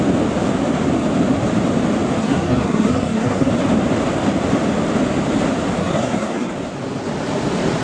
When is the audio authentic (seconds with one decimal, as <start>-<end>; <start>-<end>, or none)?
0.0-2.2; 3.5-5.8; 6.5-7.8